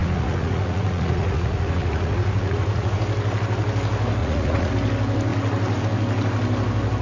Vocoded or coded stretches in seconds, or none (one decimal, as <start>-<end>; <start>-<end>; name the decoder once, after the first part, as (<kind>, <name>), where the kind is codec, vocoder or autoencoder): 0.0-3.0 (vocoder, Vocos); 4.2-4.7